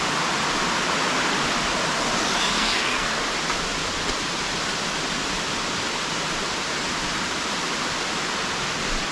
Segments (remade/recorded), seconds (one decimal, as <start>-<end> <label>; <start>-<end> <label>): 0.0-2.5 recorded; 2.5-3.2 remade; 3.2-9.1 recorded